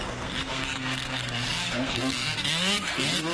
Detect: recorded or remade remade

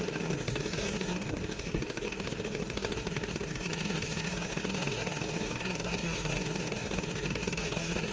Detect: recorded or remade remade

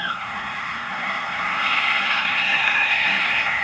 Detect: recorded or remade remade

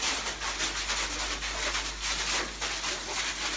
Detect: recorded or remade recorded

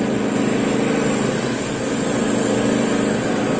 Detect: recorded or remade recorded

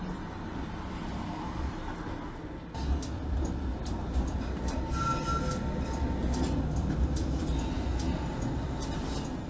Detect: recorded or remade recorded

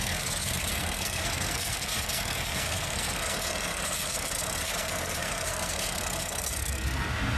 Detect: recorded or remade remade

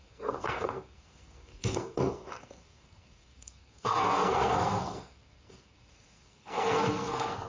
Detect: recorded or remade remade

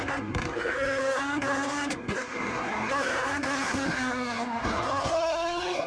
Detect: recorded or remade remade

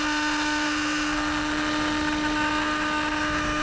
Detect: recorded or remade recorded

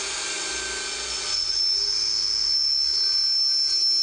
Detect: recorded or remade recorded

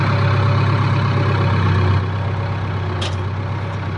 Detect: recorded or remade recorded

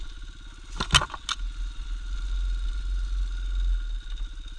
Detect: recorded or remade recorded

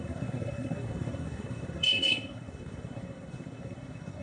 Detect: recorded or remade remade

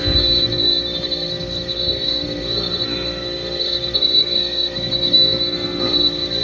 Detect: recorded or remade remade